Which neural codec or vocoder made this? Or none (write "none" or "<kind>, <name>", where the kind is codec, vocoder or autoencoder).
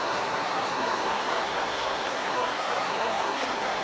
codec, SNAC